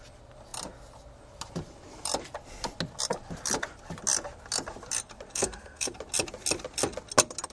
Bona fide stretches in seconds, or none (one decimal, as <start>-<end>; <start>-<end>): 0.0-5.3; 5.9-7.5